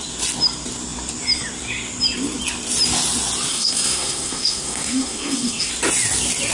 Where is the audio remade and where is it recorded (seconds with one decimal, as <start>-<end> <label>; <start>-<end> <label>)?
0.0-3.5 recorded; 3.5-5.7 remade; 5.7-6.5 recorded